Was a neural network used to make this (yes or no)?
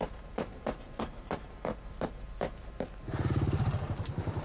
yes